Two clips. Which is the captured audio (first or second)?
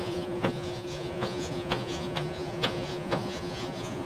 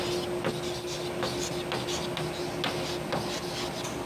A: second